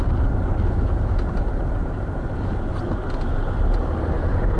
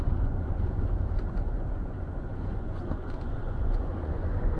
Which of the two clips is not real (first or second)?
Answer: second